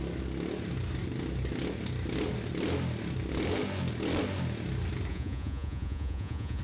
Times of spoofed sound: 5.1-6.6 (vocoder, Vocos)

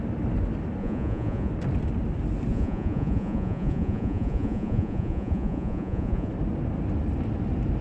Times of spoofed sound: 0.8-1.5 (vocoder, Vocos); 2.5-6.3